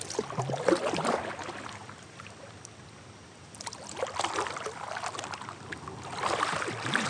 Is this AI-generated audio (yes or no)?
no